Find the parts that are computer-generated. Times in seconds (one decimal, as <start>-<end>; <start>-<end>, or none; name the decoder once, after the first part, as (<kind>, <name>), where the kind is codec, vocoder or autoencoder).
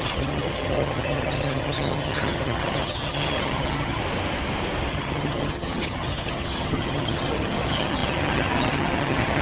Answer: 0.0-4.0 (vocoder, HiFi-GAN); 4.9-9.4